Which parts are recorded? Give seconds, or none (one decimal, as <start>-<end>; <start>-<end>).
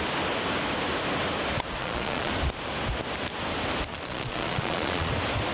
0.0-1.8; 2.3-3.9; 5.1-5.5